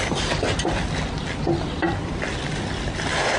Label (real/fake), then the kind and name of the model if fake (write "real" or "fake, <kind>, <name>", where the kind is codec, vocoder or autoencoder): real